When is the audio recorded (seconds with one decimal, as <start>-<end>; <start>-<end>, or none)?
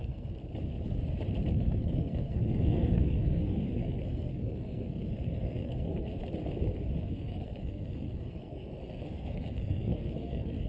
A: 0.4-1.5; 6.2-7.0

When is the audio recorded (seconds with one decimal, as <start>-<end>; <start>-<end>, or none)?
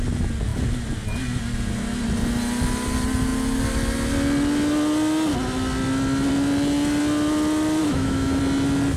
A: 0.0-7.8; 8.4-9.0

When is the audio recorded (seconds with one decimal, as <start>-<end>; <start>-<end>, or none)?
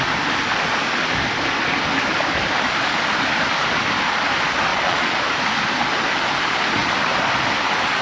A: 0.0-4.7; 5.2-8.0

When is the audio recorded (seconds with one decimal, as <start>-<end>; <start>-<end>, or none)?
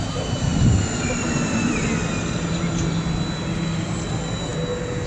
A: 0.0-5.1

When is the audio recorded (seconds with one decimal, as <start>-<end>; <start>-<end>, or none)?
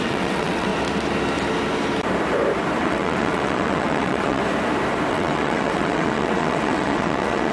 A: 0.7-2.8; 4.4-5.1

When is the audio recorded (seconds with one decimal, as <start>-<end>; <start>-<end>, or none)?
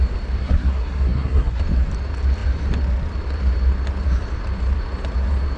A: 0.0-0.4; 1.6-5.6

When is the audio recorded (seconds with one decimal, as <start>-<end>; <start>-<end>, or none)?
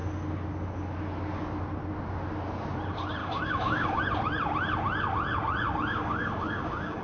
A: 0.0-3.2; 4.0-5.9